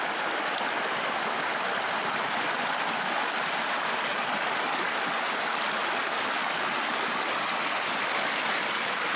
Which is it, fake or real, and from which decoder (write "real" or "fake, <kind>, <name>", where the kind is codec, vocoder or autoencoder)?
real